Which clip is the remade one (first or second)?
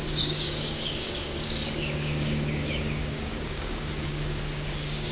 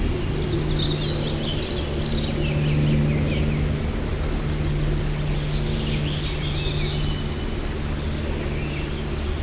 first